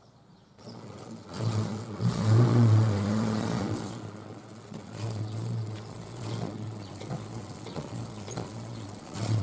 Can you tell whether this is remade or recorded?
remade